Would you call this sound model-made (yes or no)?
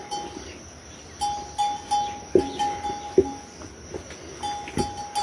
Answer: no